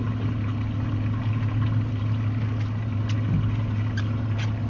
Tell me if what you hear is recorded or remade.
recorded